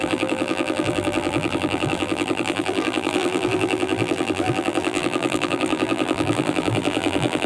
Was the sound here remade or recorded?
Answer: remade